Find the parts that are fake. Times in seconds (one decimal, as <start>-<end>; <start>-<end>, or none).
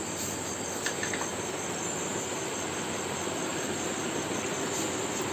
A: 1.3-2.1; 3.5-4.2